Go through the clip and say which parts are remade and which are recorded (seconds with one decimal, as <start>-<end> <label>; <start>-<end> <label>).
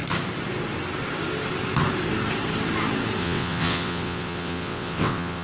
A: 0.0-3.2 recorded; 3.2-5.4 remade